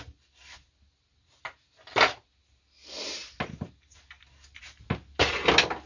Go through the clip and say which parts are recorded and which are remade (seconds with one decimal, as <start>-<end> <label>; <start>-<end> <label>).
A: 0.0-5.9 recorded